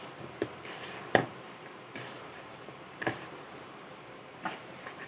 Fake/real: fake